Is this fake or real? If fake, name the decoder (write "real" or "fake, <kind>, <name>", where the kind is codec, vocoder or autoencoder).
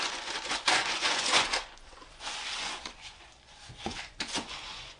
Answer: fake, vocoder, Vocos